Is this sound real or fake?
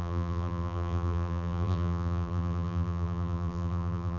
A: fake